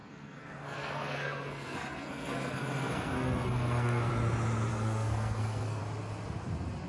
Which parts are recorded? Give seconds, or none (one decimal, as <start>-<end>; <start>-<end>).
4.1-4.7; 5.8-6.9